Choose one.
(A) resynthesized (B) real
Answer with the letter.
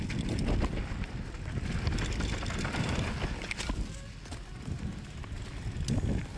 B